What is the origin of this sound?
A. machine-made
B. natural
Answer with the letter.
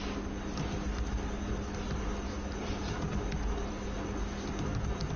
B